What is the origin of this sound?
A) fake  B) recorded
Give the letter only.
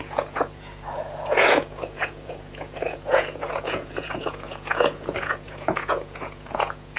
A